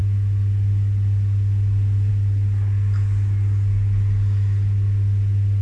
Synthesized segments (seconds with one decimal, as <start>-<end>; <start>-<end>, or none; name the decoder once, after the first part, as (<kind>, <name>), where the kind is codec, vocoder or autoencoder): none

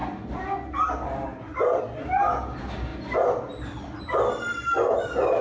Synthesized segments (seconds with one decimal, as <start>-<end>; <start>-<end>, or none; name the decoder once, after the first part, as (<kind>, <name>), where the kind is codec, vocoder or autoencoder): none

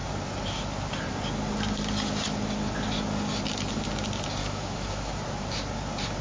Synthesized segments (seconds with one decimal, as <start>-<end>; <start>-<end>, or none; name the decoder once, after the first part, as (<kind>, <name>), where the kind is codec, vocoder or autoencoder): 4.4-5.1 (autoencoder, DAC-VAE)